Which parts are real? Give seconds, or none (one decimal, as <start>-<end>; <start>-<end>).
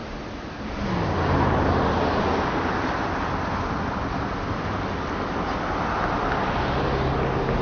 0.0-7.6